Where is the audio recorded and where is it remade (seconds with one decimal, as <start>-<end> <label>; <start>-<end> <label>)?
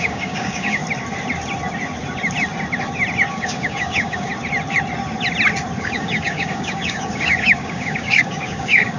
0.0-0.8 remade; 0.8-3.3 recorded; 3.3-4.3 remade; 4.3-5.8 recorded; 5.8-9.0 remade